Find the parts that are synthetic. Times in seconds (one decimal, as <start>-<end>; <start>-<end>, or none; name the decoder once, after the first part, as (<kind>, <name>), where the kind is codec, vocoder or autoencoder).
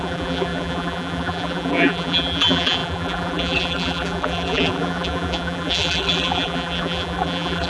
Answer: 0.0-7.7 (vocoder, BigVGAN v2)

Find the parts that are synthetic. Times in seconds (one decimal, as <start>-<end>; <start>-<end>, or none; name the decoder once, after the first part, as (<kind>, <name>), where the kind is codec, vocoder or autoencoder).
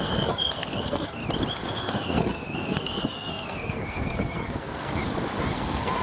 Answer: 0.0-1.2 (codec, SNAC); 1.8-5.0; 5.5-6.0